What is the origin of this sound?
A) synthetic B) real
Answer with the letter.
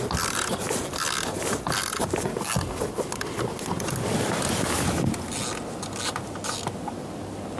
B